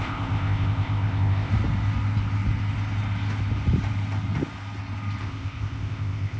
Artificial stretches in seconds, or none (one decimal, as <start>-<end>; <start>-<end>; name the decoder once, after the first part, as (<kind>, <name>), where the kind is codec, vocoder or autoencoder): 0.0-1.5 (codec, ZipCodec); 5.2-6.4